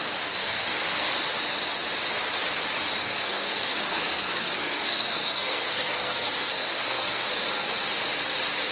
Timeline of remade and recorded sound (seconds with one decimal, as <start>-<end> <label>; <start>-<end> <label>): 0.0-0.4 recorded; 0.4-1.1 remade; 1.1-3.0 recorded; 3.0-7.2 remade; 7.2-8.7 recorded